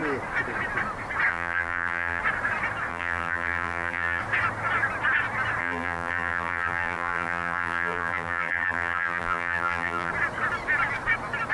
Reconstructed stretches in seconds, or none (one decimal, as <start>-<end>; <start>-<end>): 1.3-2.2; 2.9-4.2; 5.6-10.1